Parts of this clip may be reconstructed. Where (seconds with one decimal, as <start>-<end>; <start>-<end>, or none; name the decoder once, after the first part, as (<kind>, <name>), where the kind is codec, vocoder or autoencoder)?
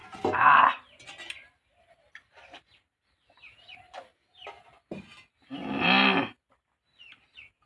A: 0.6-4.1 (vocoder, BigVGAN v2); 6.4-7.7